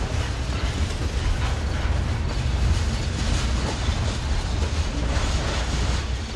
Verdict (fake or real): real